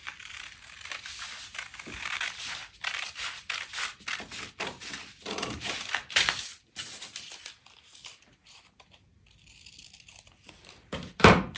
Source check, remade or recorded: remade